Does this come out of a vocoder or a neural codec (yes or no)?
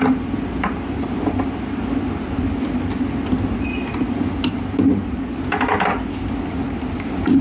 no